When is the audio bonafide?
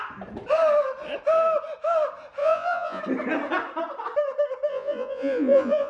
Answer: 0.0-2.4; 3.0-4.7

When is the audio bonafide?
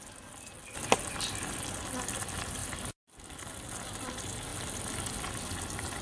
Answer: 0.0-2.6; 3.1-4.5; 5.3-6.0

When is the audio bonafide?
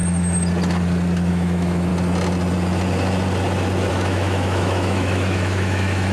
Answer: 0.0-1.3; 1.9-3.9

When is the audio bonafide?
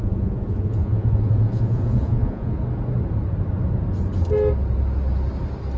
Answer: 2.6-5.8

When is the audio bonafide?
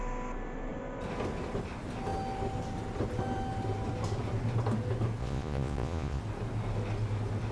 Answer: 0.0-5.2; 6.2-7.5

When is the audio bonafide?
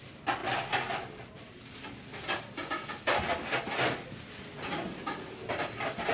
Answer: 0.0-6.1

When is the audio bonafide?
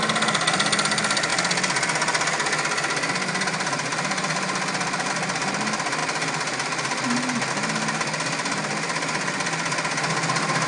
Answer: 0.0-10.7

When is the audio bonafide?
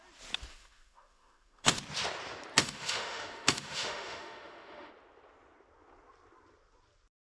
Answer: 0.0-0.5; 1.8-2.6; 4.9-7.2